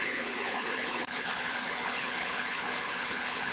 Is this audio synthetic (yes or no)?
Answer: yes